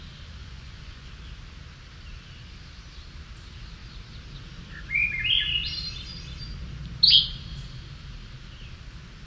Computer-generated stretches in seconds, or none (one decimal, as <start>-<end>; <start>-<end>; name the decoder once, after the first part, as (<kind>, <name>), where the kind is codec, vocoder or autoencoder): 0.4-1.1 (vocoder, Vocos)